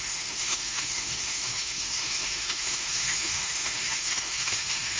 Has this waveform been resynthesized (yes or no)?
yes